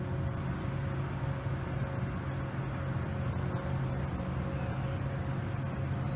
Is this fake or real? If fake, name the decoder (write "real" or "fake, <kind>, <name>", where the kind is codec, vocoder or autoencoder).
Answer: real